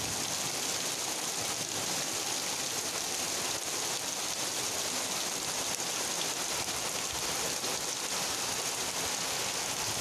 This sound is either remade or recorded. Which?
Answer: recorded